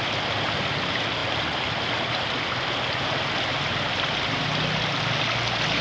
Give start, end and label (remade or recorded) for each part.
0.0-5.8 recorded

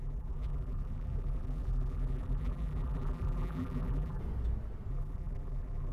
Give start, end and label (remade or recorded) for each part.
0.0-4.2 remade; 4.2-4.9 recorded; 4.9-5.9 remade

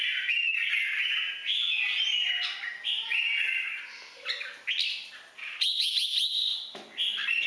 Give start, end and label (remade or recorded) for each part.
0.0-7.5 recorded

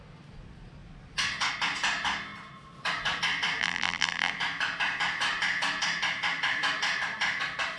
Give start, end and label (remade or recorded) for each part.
0.0-3.6 recorded; 3.6-4.3 remade; 4.3-7.8 recorded

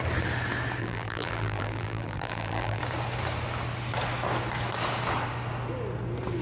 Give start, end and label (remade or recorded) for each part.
0.0-0.8 recorded; 0.8-2.8 remade; 2.8-6.4 recorded